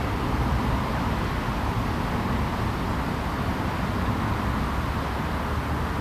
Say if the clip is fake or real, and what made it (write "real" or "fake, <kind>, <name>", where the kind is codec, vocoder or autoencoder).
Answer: real